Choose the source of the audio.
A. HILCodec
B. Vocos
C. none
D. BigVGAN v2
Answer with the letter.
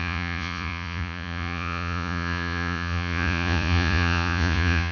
B